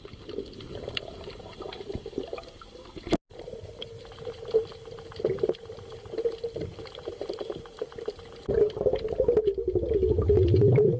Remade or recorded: recorded